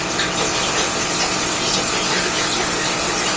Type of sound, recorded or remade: recorded